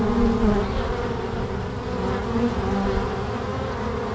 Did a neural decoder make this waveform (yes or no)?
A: no